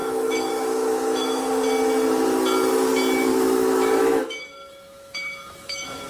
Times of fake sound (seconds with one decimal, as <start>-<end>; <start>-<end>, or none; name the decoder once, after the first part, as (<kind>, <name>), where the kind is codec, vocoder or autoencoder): 0.0-1.4 (autoencoder, DAC-VAE); 3.3-6.1